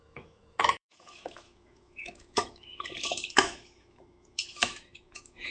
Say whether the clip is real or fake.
fake